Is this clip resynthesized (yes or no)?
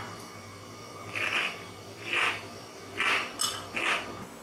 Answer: no